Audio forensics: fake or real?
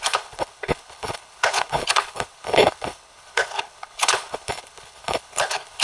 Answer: fake